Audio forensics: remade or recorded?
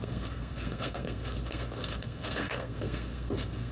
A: remade